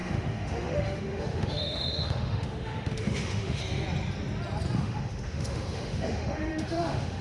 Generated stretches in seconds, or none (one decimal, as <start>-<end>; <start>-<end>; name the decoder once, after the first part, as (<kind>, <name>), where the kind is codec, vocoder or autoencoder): 0.0-3.6 (autoencoder, DAC-VAE); 4.8-7.2